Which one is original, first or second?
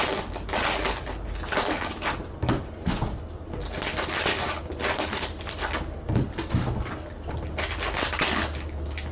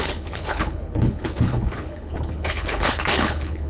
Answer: first